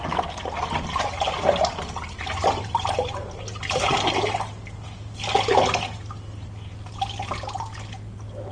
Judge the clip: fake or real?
real